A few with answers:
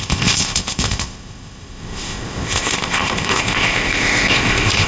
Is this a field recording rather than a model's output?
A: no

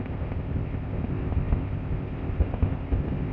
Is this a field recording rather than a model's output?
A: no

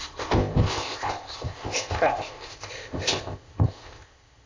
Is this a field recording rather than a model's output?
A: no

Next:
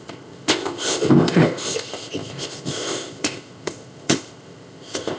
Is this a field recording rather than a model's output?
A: no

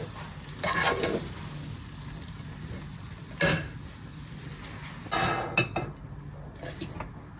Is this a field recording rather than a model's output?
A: yes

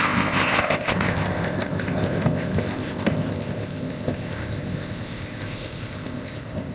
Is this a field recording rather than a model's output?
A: no